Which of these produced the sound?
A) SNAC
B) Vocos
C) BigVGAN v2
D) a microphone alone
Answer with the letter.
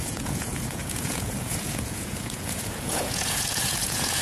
B